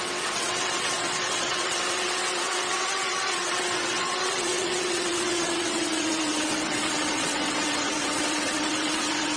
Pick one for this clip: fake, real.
fake